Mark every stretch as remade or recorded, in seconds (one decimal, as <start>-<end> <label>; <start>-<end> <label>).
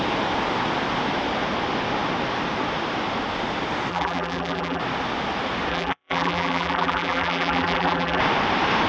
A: 0.0-3.9 recorded; 3.9-4.8 remade; 4.8-5.7 recorded; 5.7-8.2 remade; 8.2-8.9 recorded